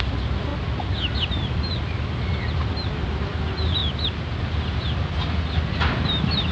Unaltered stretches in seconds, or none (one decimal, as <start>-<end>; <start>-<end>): 0.0-6.5